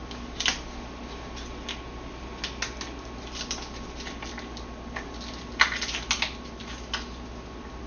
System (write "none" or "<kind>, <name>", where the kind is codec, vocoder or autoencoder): none